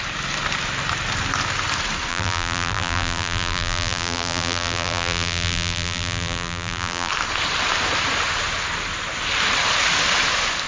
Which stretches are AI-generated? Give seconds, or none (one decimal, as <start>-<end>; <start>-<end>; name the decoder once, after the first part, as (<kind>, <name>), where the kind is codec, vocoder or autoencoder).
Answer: 2.1-7.1 (vocoder, BigVGAN v2)